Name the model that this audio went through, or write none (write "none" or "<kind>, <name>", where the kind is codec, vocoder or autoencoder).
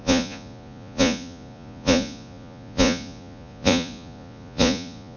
vocoder, Vocos